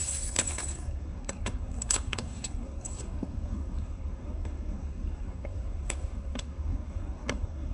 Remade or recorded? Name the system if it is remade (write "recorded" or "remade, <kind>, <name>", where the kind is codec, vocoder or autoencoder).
remade, codec, SNAC